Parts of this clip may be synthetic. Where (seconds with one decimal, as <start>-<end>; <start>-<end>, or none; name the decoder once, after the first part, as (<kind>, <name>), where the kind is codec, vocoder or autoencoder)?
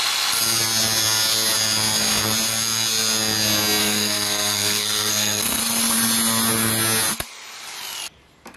3.8-5.6 (codec, SNAC)